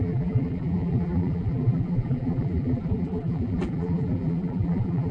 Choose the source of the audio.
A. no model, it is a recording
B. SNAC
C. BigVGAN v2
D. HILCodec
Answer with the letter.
C